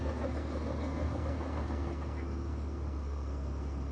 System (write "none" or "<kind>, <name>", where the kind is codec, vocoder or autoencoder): codec, SNAC